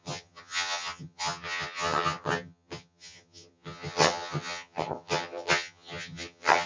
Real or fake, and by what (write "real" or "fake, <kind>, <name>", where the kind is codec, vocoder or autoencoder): fake, vocoder, HiFi-GAN